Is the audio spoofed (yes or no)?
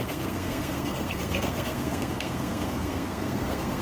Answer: yes